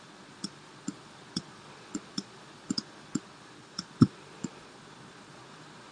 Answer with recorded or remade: remade